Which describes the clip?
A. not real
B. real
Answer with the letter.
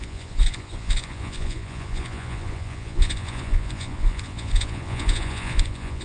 A